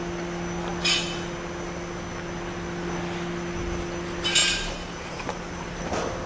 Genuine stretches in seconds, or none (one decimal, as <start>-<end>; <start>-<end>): 0.0-4.4; 5.3-6.3